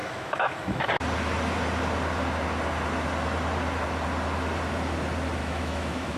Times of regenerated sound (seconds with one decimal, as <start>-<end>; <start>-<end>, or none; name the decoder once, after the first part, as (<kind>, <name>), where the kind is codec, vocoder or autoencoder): 0.0-0.9 (autoencoder, DAC-VAE); 5.4-6.2